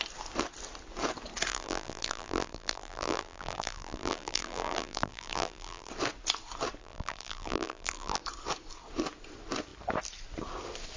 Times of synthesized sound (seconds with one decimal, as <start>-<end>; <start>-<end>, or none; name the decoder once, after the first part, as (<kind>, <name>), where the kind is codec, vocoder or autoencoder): 1.5-5.9 (vocoder, BigVGAN v2); 6.8-8.2